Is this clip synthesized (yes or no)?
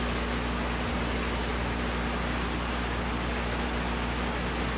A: no